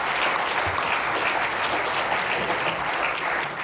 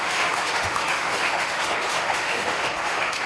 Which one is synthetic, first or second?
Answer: second